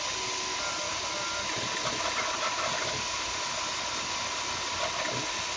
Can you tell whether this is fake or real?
real